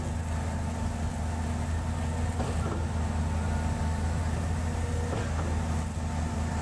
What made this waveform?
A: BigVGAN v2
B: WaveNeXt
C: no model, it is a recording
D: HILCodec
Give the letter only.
C